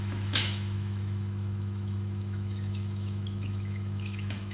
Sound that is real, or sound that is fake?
fake